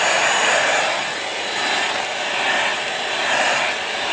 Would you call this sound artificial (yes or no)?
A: no